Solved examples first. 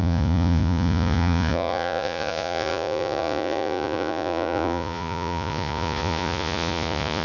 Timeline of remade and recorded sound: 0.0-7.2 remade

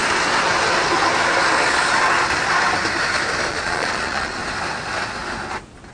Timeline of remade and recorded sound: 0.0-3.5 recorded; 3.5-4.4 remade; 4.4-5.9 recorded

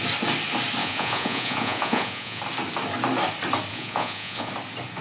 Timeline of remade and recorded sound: 0.0-0.8 recorded; 0.8-2.4 remade; 2.4-3.7 recorded; 3.7-4.5 remade; 4.5-5.0 recorded

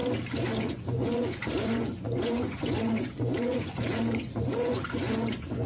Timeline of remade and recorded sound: 0.0-0.6 recorded; 0.6-5.7 remade